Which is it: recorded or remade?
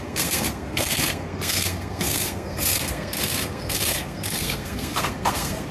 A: remade